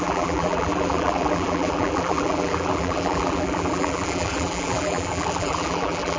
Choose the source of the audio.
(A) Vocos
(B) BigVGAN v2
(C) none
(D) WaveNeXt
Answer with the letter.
B